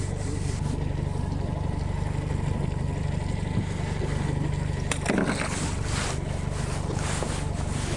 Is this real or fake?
real